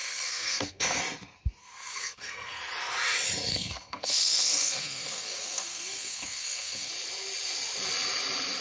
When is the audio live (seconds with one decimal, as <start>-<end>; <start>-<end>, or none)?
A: 1.0-1.6; 2.6-3.5; 6.9-8.6